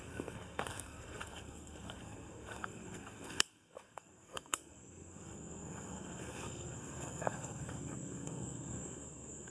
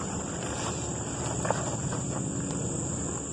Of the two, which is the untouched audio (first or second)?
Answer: second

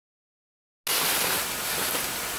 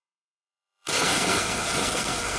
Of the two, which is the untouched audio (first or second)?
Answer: first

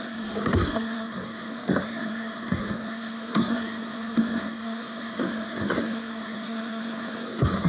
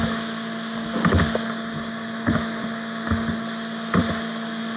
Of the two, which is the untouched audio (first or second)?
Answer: second